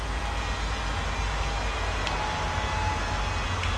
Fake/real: real